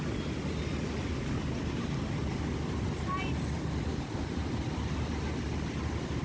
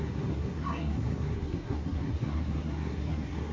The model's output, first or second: second